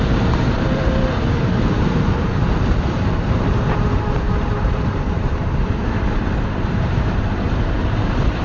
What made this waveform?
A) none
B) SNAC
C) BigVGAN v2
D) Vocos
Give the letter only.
C